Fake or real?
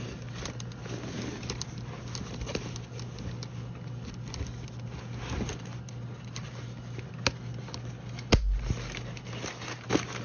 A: real